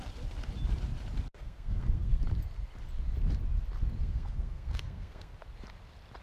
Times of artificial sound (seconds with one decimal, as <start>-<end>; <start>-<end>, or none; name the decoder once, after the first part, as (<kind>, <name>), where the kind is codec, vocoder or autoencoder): 1.3-2.2 (codec, SNAC); 4.0-5.3